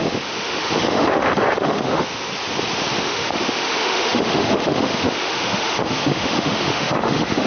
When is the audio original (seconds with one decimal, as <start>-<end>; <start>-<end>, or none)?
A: 2.3-3.0